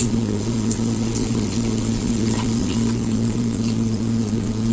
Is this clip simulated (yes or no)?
yes